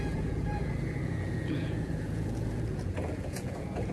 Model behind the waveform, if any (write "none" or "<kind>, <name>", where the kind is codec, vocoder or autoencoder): vocoder, Vocos